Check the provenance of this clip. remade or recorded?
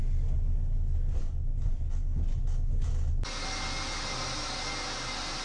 recorded